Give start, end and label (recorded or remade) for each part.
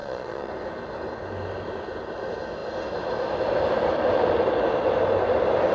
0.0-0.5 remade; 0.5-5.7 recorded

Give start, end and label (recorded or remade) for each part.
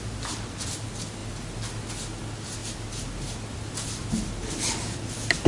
0.0-5.5 recorded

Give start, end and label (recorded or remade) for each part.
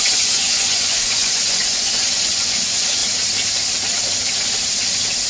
0.0-3.0 remade; 3.0-5.3 recorded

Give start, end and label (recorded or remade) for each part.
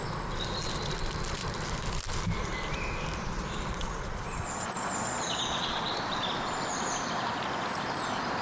0.0-3.2 recorded; 3.2-6.0 remade; 6.0-8.4 recorded